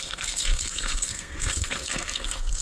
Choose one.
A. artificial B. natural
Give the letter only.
A